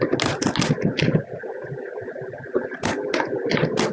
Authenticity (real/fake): real